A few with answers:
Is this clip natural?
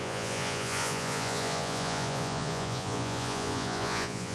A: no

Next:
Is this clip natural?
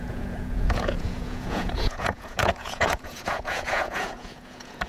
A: no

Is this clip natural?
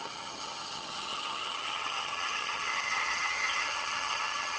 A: no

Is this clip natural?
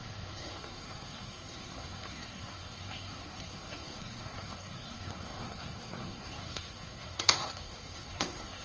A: no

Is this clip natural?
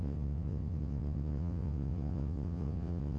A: no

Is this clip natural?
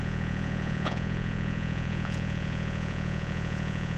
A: no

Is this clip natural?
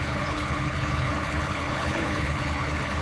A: no